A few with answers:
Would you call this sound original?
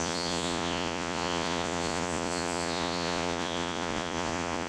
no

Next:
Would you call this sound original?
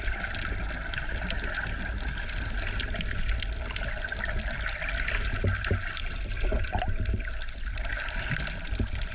yes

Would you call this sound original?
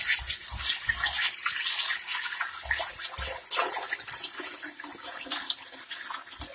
yes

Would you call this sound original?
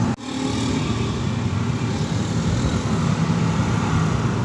yes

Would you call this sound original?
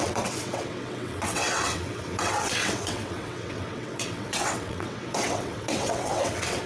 no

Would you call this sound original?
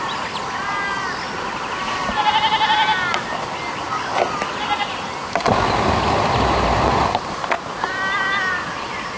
yes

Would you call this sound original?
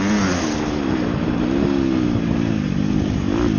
yes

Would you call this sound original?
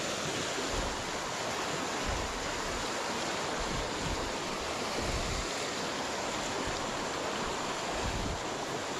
yes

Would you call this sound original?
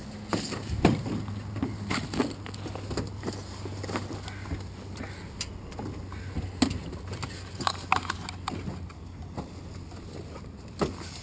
yes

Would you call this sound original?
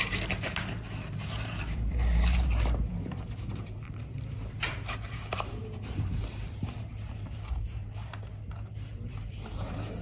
no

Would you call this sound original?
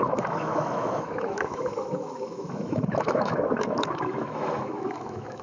no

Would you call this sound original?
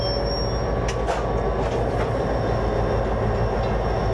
yes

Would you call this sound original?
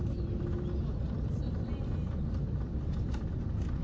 yes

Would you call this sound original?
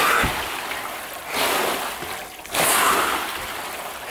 yes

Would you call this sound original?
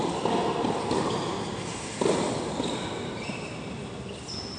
yes